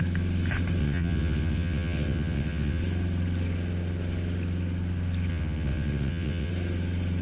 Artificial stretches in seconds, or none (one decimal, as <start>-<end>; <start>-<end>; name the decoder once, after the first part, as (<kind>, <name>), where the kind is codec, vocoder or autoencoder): 0.8-2.8 (vocoder, WaveNeXt); 5.3-6.5